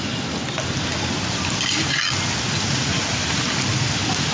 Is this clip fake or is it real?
real